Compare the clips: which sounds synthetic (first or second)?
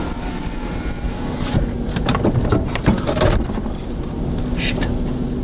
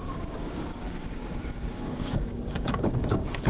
second